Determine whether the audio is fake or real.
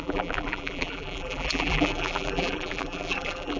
fake